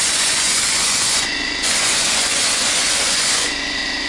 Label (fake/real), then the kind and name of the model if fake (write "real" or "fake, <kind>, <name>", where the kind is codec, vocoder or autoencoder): fake, vocoder, Vocos